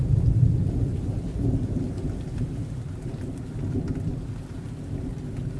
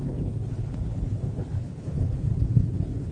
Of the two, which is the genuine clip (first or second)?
first